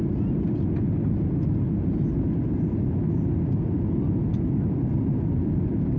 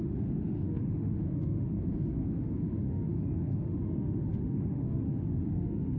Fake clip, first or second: second